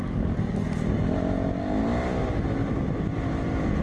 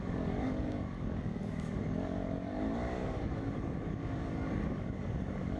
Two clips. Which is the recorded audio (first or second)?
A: first